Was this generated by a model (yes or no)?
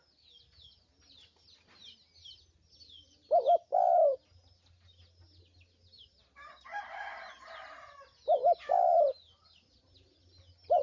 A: no